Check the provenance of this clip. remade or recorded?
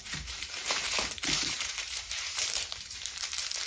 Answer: remade